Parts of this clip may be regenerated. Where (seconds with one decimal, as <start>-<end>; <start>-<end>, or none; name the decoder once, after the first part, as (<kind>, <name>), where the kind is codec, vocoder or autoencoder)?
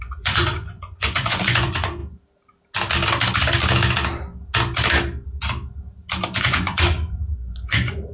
0.0-2.0 (vocoder, Vocos); 6.4-8.1